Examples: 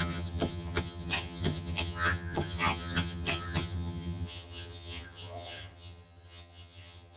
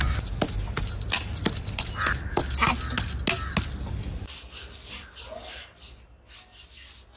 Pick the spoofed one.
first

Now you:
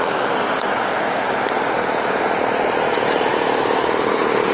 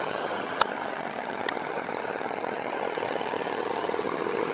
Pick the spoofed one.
second